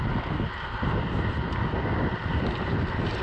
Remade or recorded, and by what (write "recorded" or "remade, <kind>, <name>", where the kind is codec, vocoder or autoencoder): recorded